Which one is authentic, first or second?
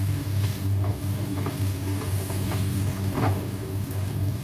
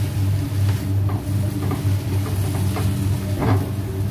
second